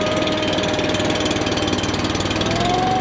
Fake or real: real